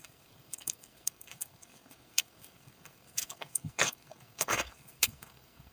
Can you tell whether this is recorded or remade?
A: remade